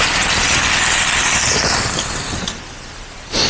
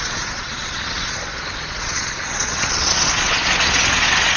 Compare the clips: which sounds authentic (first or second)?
first